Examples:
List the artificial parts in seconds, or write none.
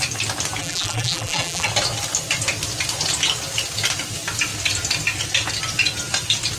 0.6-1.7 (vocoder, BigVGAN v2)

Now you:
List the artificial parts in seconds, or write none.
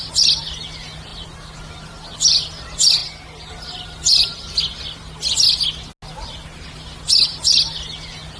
none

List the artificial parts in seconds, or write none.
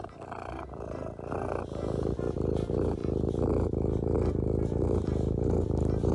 none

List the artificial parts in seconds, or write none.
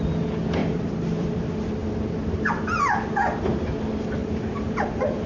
0.6-1.3 (vocoder, BigVGAN v2); 4.2-5.3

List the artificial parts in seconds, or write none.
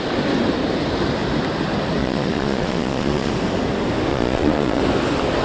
2.0-3.3 (vocoder, Vocos); 4.1-4.8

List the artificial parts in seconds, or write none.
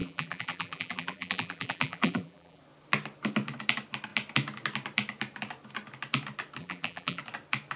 0.0-2.6 (vocoder, BigVGAN v2); 6.6-7.2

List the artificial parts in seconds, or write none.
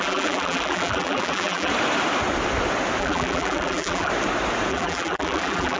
0.0-1.7 (vocoder, BigVGAN v2); 3.0-4.1; 4.7-5.8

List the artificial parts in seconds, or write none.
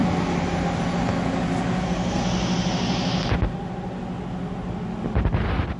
1.8-2.2 (codec, SNAC)